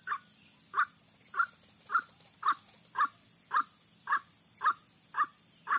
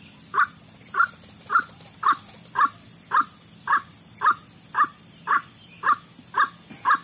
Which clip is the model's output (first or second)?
second